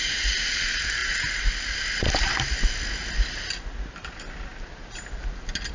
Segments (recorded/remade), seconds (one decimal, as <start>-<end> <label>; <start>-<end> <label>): 0.0-5.7 recorded